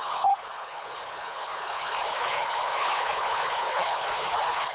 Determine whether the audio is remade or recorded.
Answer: remade